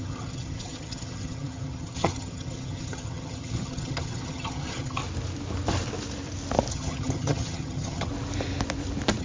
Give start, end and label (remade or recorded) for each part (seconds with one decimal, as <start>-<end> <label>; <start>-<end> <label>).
0.0-5.0 remade; 5.0-6.7 recorded; 6.7-8.1 remade; 8.1-9.2 recorded